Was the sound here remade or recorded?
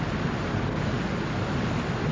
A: recorded